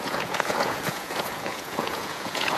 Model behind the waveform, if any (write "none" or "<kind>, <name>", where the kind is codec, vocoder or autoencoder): vocoder, Vocos